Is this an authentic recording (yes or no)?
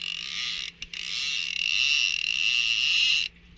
yes